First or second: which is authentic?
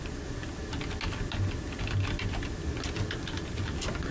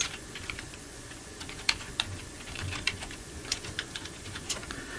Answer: first